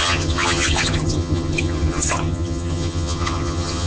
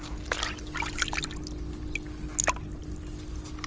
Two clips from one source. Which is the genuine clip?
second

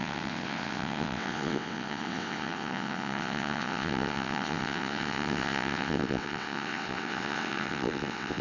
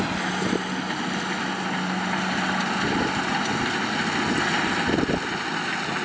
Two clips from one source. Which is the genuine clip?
second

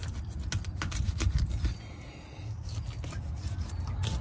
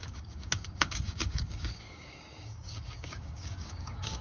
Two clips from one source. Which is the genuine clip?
first